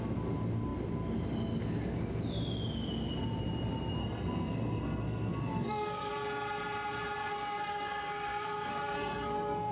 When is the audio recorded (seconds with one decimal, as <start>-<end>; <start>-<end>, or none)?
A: 0.0-4.0; 6.1-7.2